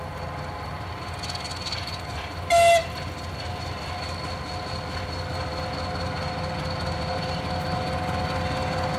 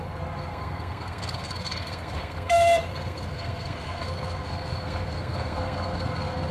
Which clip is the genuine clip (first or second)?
first